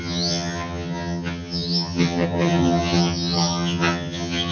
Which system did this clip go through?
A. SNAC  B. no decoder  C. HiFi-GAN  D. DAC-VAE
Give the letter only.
C